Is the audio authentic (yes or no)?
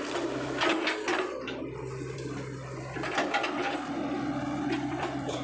yes